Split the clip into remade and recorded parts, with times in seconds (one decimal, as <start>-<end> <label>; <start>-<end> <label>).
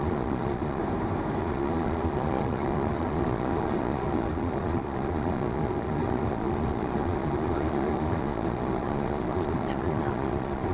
0.0-0.8 remade; 0.8-1.4 recorded; 1.4-10.7 remade